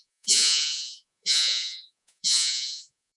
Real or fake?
fake